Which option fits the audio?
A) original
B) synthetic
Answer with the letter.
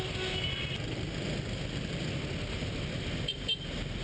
A